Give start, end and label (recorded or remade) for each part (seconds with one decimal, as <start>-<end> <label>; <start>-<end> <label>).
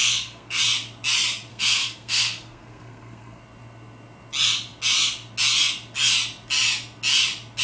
0.0-0.6 remade; 0.6-1.5 recorded; 1.5-3.4 remade; 3.4-7.6 recorded